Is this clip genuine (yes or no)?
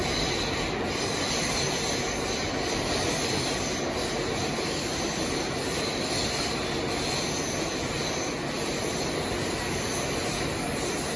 yes